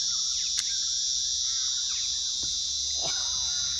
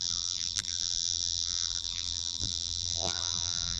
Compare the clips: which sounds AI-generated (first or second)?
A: second